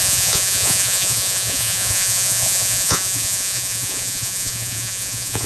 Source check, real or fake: fake